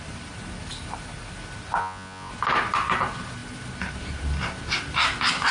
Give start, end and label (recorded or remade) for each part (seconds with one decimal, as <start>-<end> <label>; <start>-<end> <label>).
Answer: 0.0-1.8 recorded; 1.8-2.3 remade; 2.3-5.5 recorded